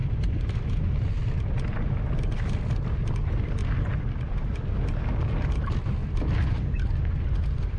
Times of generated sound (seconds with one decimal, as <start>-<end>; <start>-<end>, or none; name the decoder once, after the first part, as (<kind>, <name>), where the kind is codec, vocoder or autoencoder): 0.0-0.7 (vocoder, BigVGAN v2); 6.0-7.0